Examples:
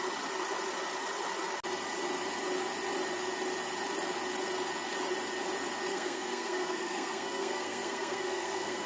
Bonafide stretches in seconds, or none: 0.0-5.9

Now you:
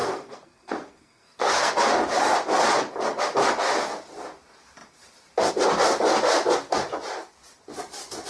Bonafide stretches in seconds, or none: 1.7-8.3

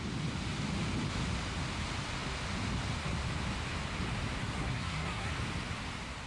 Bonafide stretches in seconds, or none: 0.0-4.4; 5.3-6.3